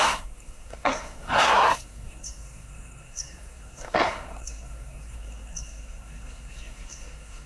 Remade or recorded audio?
remade